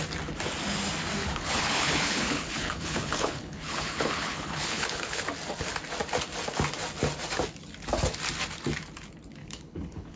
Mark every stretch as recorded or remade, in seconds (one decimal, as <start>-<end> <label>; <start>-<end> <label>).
0.0-1.2 recorded; 1.2-5.2 remade; 5.2-9.4 recorded; 9.4-10.2 remade